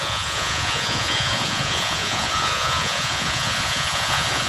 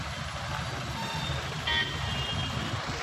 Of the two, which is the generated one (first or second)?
first